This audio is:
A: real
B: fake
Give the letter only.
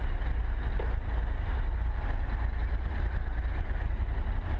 A